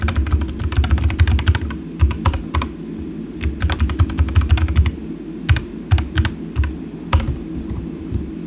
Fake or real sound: real